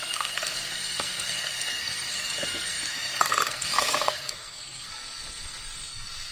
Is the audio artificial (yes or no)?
yes